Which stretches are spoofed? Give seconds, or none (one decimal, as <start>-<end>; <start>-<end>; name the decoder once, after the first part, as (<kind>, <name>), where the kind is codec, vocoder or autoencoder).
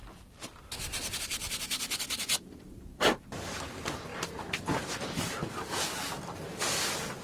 1.4-2.0 (vocoder, BigVGAN v2); 4.1-6.4